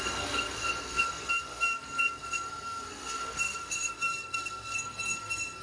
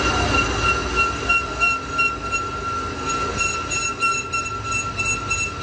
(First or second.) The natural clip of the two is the second